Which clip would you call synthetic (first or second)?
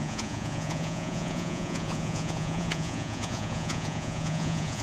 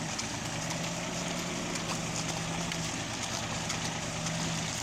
first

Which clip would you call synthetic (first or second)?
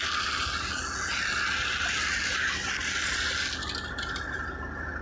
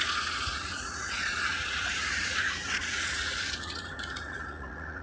second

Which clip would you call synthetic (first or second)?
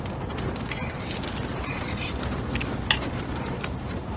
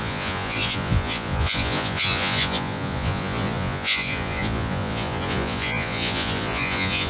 second